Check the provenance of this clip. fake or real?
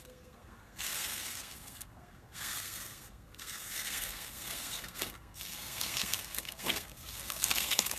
fake